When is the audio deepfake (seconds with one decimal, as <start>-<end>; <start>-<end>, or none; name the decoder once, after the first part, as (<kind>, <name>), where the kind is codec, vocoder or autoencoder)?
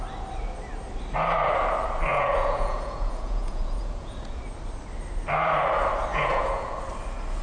2.1-4.4 (vocoder, Vocos); 6.1-6.8